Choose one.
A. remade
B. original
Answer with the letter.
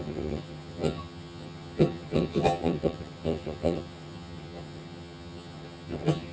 A